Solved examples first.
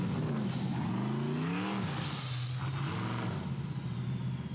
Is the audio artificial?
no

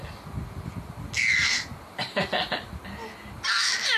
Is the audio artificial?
no